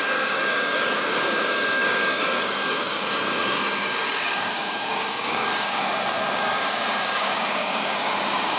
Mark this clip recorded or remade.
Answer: remade